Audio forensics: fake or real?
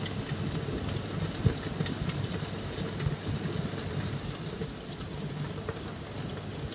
real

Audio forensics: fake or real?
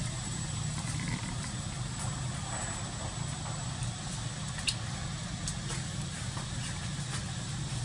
real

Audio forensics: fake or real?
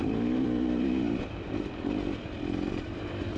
fake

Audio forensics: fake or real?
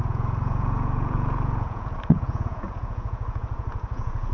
fake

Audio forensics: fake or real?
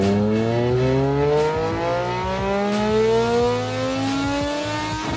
real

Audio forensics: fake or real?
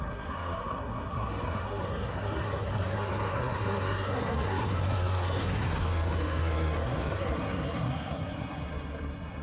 fake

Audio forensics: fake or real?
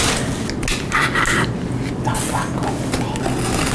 real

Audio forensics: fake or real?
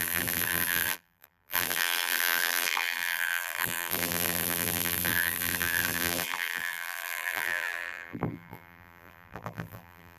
fake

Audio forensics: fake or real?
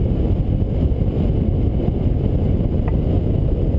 real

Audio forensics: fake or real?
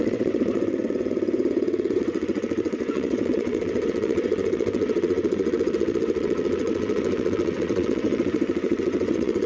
fake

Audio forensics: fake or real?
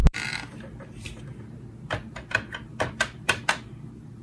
fake